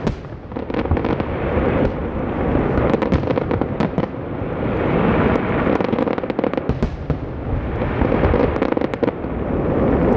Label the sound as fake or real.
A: real